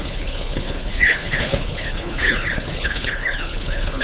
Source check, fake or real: fake